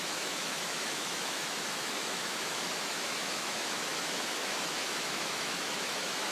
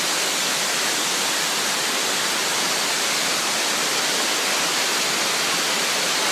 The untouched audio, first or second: second